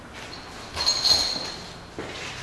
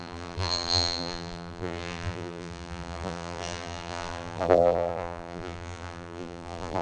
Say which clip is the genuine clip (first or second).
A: first